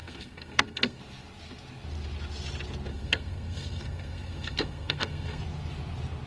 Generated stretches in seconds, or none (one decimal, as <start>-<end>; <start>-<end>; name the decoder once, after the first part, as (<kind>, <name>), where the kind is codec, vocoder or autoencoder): 0.0-1.0 (codec, SNAC); 2.9-5.4